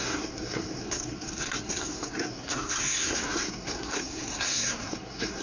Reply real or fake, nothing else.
fake